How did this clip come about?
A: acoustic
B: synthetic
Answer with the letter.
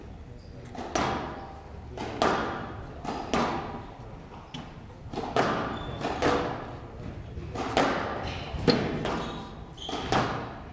A